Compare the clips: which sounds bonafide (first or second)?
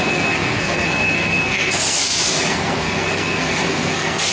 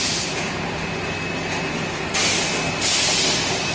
second